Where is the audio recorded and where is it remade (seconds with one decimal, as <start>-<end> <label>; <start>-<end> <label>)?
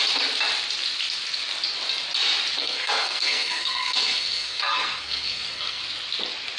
0.0-2.6 recorded; 2.6-5.8 remade; 5.8-6.6 recorded